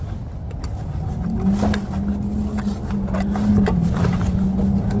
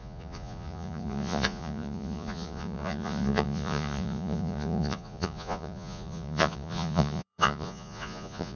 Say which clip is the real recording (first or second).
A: first